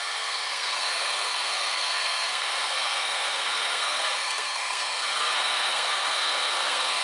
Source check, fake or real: fake